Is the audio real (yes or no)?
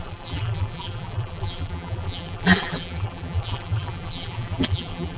no